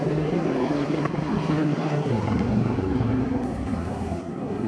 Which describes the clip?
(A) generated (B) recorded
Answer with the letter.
A